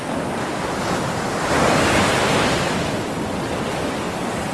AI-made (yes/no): no